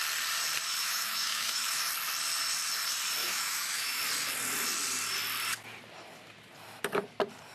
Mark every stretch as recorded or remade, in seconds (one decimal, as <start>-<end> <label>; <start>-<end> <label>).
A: 0.0-0.8 recorded; 0.8-1.9 remade; 1.9-3.2 recorded; 3.2-4.0 remade; 4.0-7.5 recorded